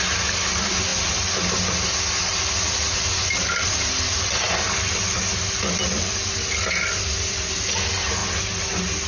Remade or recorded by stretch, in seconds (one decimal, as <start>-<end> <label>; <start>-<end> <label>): 0.0-9.1 recorded